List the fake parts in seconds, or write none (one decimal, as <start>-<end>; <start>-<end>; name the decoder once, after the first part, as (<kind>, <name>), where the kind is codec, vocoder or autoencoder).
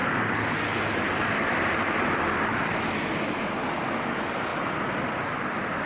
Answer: none